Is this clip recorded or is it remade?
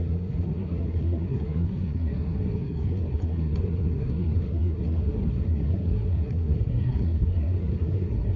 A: remade